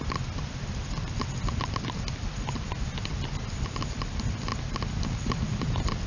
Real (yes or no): yes